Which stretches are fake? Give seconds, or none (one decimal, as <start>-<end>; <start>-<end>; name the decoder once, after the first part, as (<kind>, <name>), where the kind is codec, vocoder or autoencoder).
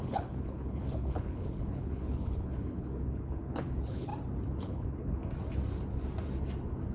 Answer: 0.0-4.1 (codec, HILCodec); 4.6-5.2